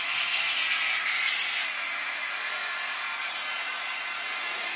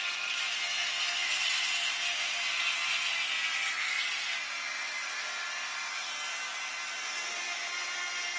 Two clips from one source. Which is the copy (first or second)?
first